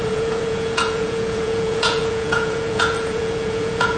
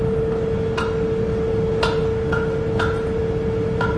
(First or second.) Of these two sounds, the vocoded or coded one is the first